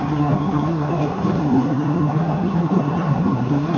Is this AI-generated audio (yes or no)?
yes